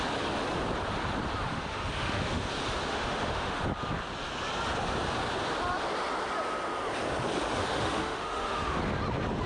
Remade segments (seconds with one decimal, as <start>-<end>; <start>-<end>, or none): 1.5-2.5; 2.9-3.6; 7.6-8.8